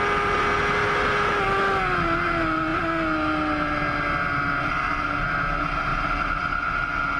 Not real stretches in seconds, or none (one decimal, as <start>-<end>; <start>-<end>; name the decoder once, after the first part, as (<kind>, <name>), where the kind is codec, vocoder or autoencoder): none